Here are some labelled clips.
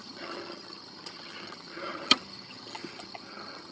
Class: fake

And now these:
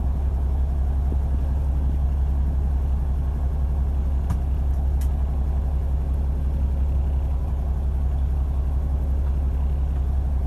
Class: real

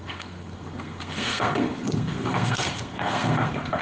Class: fake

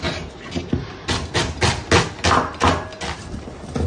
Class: real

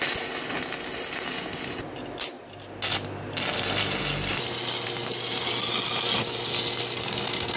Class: real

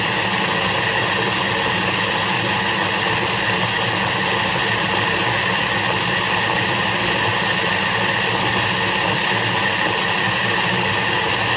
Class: real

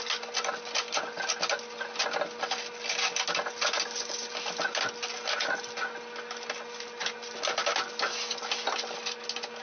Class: real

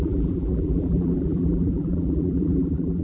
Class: fake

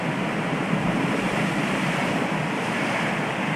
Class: real